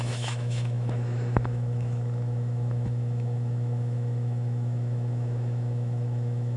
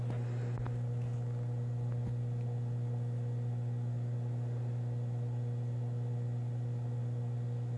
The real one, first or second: second